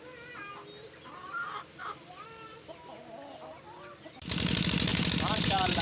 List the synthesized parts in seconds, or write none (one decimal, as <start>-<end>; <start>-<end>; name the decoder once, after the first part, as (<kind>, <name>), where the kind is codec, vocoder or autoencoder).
1.8-2.8 (vocoder, BigVGAN v2); 4.9-5.8